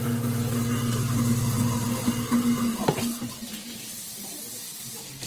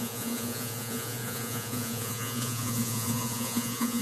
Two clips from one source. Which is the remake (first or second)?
second